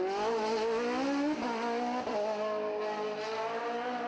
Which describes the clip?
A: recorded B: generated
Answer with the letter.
A